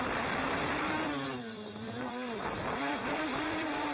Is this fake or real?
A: fake